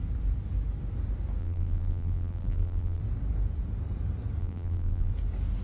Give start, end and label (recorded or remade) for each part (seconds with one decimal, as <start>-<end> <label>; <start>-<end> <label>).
0.0-1.4 recorded; 1.4-3.0 remade; 3.0-4.4 recorded; 4.4-5.1 remade; 5.1-5.6 recorded